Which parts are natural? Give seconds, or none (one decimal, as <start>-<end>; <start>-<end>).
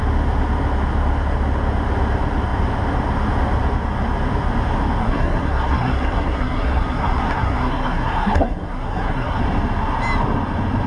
0.0-5.0; 9.4-10.9